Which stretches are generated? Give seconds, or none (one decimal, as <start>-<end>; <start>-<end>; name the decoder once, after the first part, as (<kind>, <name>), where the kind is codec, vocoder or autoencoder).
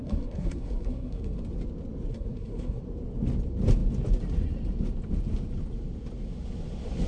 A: 0.0-1.4 (codec, SNAC); 2.1-2.8